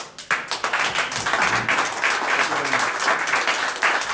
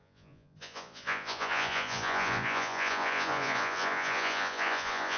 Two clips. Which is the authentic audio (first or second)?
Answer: first